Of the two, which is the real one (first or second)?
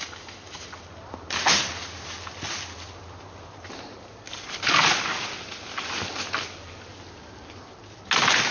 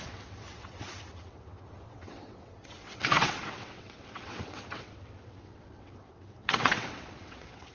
first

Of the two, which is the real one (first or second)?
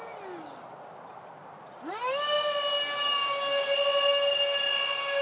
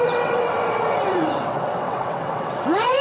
first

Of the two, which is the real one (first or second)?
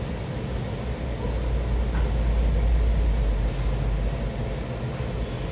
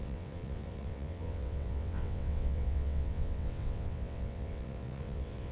first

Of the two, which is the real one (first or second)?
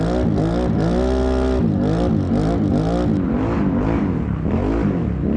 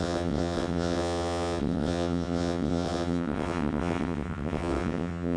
first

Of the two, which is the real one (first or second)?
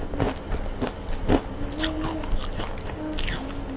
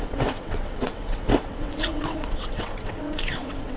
first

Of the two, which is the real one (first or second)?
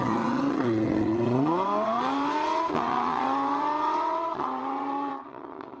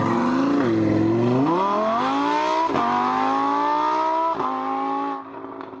second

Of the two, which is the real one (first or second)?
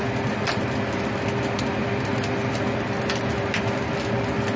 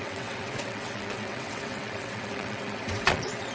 first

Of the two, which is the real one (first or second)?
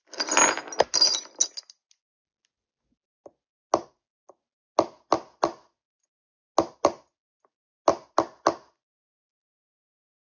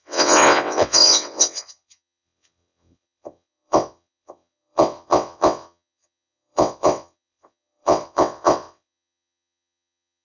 first